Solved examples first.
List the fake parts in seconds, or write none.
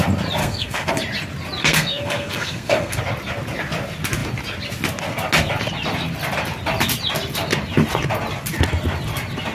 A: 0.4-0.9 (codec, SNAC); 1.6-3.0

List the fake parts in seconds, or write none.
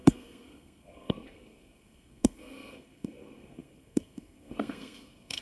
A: 0.0-5.4 (codec, SNAC)